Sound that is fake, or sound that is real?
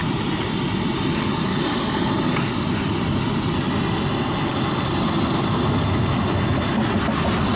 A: real